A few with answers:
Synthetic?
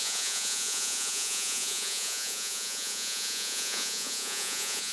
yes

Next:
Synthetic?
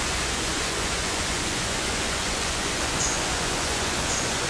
yes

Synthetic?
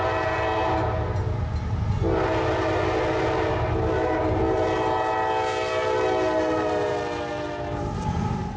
no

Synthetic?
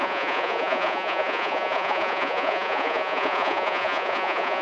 yes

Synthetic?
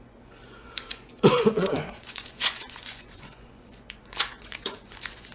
yes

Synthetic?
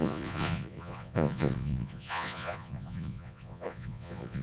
yes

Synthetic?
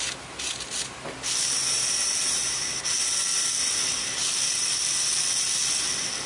no